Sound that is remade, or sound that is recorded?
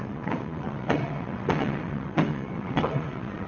remade